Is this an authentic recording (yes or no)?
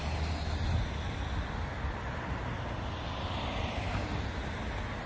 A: yes